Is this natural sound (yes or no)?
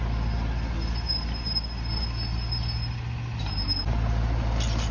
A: yes